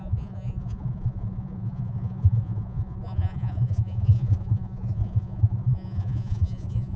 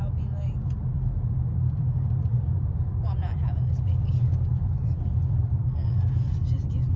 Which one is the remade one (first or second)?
first